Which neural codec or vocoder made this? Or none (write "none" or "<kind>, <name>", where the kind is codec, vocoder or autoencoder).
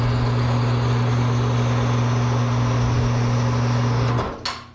none